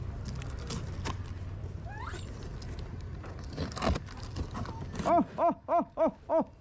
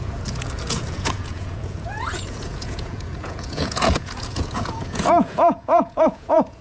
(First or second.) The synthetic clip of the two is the second